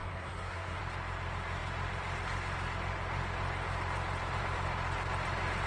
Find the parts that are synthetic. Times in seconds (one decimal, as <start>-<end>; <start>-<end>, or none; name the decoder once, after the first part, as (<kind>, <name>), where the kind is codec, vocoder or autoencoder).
0.0-0.8 (codec, SNAC)